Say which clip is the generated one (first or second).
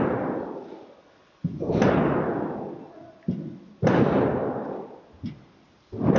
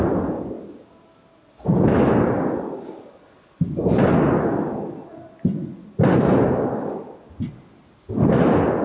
first